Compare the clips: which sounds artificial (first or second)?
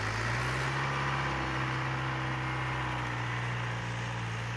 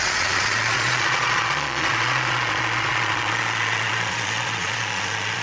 second